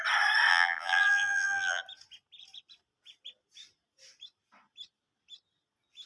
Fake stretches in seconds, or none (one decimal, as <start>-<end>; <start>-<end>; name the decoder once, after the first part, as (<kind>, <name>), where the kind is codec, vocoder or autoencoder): 0.5-1.8 (vocoder, BigVGAN v2)